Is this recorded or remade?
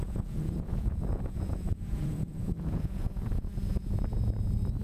remade